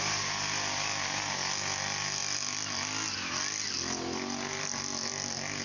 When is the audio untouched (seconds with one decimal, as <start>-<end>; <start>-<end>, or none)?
0.0-5.6